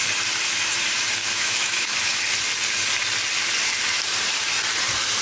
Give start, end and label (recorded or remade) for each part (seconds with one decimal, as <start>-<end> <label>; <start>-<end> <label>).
0.0-1.2 recorded; 1.2-2.2 remade; 2.2-5.2 recorded